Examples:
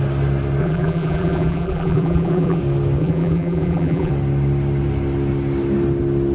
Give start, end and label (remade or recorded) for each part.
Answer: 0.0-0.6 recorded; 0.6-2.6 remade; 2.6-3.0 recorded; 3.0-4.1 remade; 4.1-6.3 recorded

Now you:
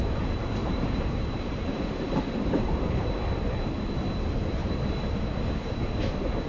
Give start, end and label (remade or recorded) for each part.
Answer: 0.0-0.6 recorded; 0.6-2.8 remade; 2.8-4.6 recorded; 4.6-5.2 remade; 5.2-6.5 recorded

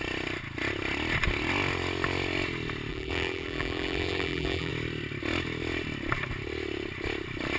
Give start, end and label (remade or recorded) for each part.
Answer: 0.0-2.9 recorded; 2.9-4.7 remade; 4.7-7.6 recorded

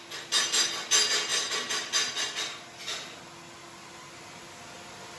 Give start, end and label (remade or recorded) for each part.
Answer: 0.0-5.2 recorded

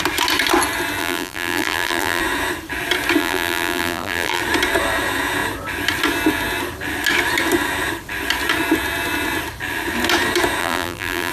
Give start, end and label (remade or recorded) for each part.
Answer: 0.0-1.0 recorded; 1.0-2.2 remade; 2.2-3.2 recorded; 3.2-4.4 remade; 4.4-10.6 recorded; 10.6-11.3 remade